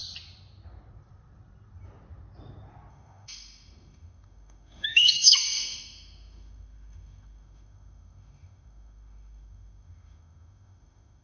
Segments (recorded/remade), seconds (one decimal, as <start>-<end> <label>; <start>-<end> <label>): 0.0-2.9 recorded; 2.9-11.2 remade